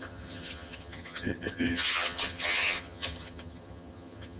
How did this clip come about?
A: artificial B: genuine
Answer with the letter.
A